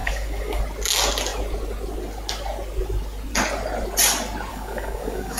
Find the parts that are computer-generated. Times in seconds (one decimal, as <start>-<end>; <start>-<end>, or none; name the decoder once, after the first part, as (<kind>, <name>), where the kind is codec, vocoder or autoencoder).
0.0-0.6 (codec, DAC); 4.5-5.4